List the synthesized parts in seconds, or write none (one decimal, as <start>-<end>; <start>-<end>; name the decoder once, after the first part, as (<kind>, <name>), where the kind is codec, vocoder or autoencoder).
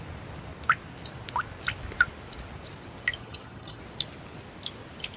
3.2-3.8 (vocoder, HiFi-GAN)